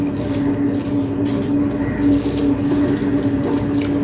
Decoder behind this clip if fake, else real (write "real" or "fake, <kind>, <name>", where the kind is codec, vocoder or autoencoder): real